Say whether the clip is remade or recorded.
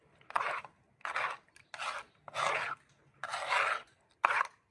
recorded